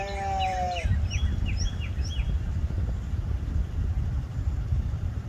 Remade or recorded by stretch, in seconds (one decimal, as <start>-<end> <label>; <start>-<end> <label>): 0.0-0.9 remade; 0.9-4.1 recorded; 4.1-5.3 remade